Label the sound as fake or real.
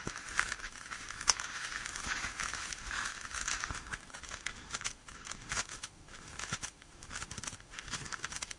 fake